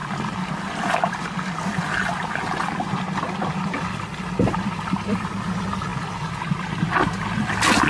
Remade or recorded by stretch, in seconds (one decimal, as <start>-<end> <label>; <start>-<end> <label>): 0.0-7.9 recorded